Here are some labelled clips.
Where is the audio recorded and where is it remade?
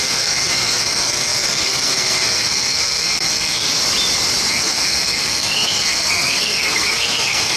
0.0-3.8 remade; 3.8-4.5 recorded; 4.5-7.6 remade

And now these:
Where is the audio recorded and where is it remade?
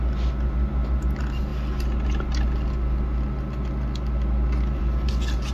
0.0-5.5 recorded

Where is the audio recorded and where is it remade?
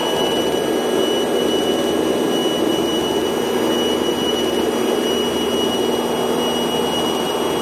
0.0-7.6 recorded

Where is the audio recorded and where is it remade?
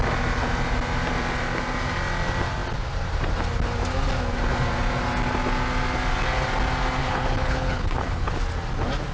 0.0-7.0 recorded; 7.0-8.3 remade; 8.3-9.1 recorded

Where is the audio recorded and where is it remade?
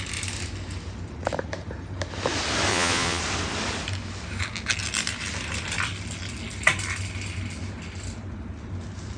0.0-2.7 recorded; 2.7-3.2 remade; 3.2-9.2 recorded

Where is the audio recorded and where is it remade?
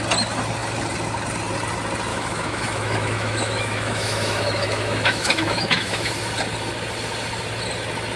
0.0-2.1 recorded; 2.1-6.1 remade; 6.1-8.2 recorded